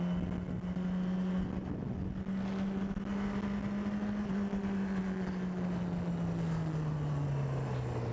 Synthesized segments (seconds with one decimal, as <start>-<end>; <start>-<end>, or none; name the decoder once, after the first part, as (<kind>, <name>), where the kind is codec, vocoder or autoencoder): none